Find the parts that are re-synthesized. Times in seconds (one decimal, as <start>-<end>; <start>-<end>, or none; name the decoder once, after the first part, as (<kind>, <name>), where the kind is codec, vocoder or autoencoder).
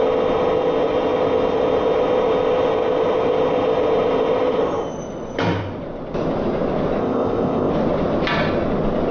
7.0-7.7 (codec, ZipCodec)